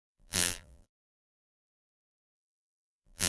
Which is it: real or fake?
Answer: fake